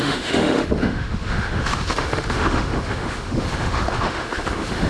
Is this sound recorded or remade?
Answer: remade